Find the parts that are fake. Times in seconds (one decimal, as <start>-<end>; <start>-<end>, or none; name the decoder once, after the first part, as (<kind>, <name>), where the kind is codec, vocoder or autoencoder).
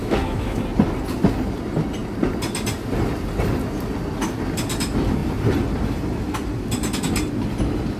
0.0-0.6 (autoencoder, DAC-VAE)